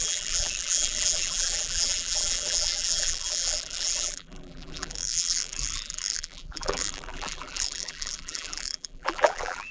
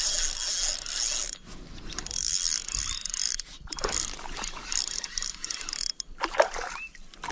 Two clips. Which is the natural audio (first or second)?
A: second